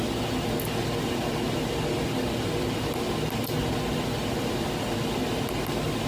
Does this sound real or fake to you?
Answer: real